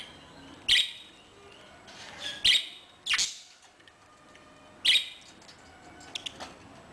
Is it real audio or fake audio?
real